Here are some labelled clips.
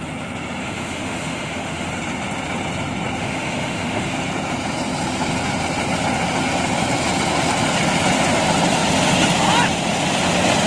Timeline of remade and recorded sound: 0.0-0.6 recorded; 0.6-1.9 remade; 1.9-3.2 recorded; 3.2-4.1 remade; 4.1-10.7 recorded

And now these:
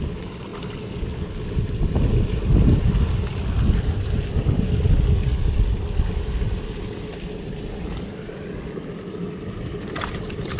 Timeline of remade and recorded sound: 0.0-10.6 recorded

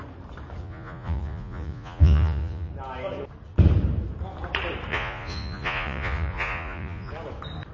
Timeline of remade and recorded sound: 0.0-0.6 recorded; 0.6-2.7 remade; 2.7-4.9 recorded; 4.9-7.1 remade; 7.1-7.7 recorded